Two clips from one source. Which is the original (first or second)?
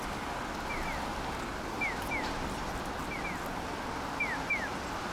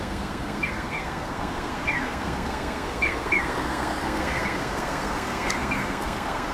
first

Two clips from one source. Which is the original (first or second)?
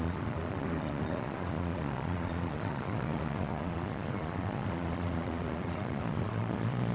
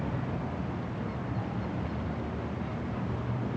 second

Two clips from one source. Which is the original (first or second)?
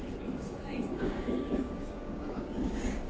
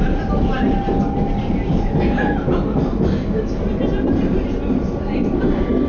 second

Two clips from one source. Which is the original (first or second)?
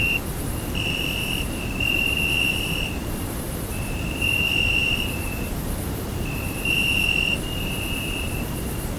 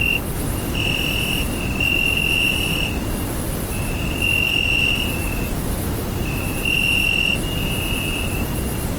second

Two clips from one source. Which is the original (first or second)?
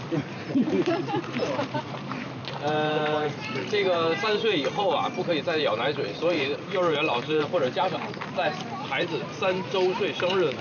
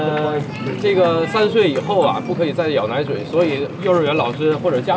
second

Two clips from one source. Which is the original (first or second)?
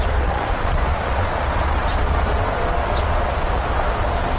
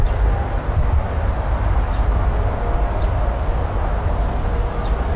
second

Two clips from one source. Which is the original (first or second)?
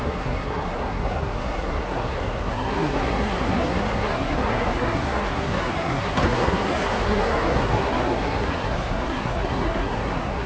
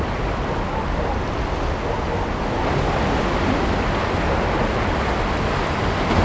second